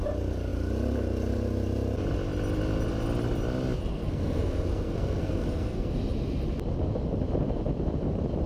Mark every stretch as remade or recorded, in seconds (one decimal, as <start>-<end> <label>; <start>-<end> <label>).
0.0-3.9 recorded; 3.9-5.9 remade; 5.9-8.5 recorded